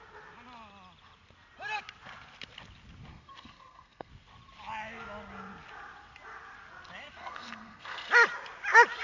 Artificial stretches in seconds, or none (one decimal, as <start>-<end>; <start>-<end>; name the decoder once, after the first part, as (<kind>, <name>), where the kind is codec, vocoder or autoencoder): 3.1-4.1 (codec, SNAC); 7.2-8.1